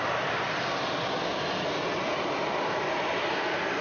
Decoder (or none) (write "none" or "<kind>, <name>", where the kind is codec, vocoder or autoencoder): none